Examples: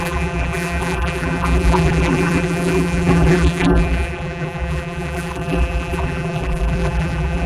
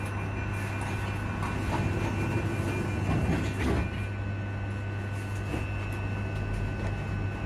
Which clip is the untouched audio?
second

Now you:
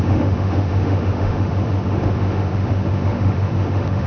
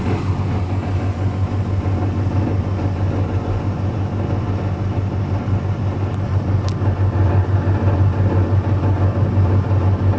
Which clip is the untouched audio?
second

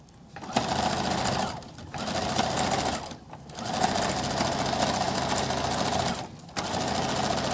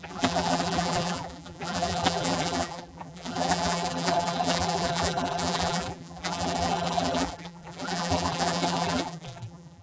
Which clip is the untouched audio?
first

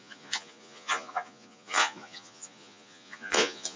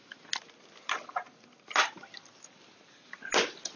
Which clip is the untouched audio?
second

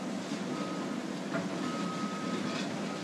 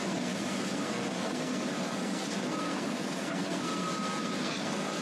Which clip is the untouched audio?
first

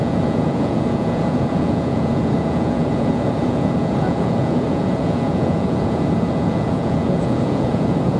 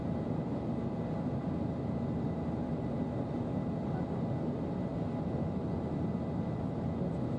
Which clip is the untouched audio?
second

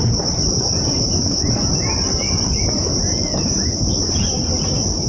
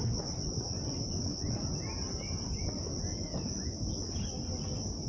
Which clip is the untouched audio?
second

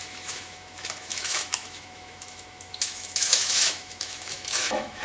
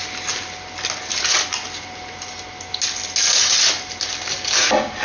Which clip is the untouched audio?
second